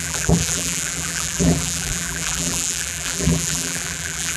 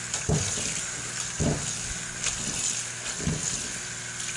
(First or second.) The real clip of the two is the second